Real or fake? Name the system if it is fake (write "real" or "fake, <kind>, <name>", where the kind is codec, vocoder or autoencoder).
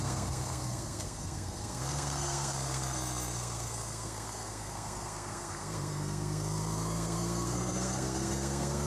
fake, codec, SNAC